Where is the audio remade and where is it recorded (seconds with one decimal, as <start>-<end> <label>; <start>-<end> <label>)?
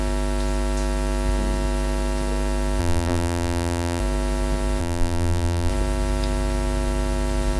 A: 0.0-2.8 recorded; 2.8-4.0 remade; 4.0-4.8 recorded; 4.8-5.7 remade; 5.7-7.6 recorded